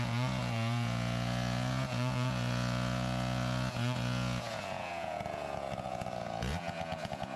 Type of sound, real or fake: fake